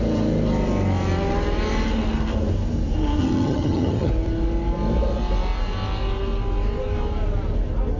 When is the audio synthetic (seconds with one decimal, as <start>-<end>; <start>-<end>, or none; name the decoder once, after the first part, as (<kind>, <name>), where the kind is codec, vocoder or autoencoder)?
3.2-4.1 (vocoder, HiFi-GAN)